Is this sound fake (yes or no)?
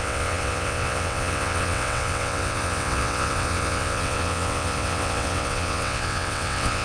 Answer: yes